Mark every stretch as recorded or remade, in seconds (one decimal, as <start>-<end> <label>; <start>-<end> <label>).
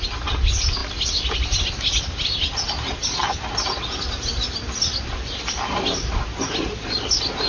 0.0-7.5 recorded